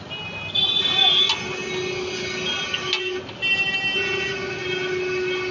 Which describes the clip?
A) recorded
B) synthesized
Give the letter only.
A